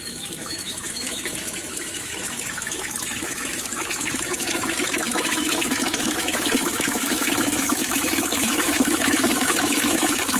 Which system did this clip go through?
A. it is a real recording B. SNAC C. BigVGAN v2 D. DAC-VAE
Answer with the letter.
D